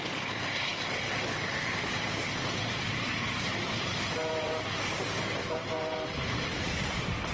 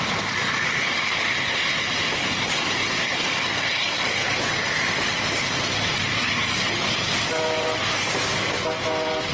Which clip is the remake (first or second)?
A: first